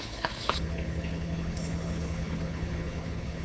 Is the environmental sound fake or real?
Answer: fake